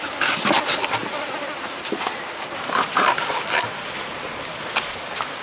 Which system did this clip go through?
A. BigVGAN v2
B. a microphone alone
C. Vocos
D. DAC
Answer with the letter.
B